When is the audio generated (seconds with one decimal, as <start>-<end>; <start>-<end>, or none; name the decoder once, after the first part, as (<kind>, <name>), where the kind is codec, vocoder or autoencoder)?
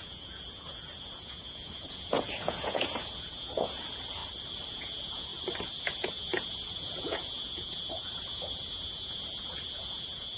0.0-4.2 (vocoder, Vocos); 4.7-5.3; 5.8-10.4